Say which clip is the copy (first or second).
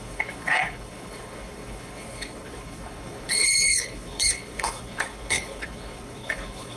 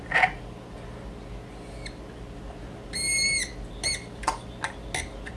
first